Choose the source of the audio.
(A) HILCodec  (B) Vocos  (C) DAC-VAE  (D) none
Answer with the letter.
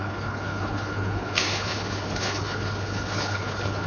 A